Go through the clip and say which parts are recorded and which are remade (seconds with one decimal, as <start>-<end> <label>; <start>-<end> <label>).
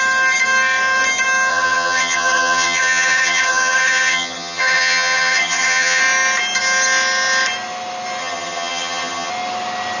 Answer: 0.0-1.5 recorded; 1.5-6.0 remade; 6.0-8.2 recorded; 8.2-9.3 remade; 9.3-10.0 recorded